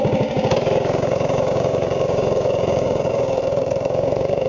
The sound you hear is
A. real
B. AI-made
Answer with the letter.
B